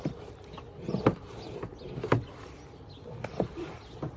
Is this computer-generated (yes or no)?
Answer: no